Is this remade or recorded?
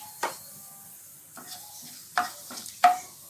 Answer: recorded